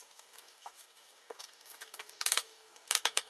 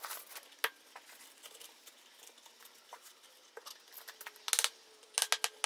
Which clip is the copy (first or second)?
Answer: first